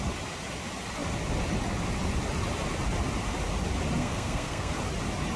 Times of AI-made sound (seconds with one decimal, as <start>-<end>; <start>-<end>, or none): 4.0-4.7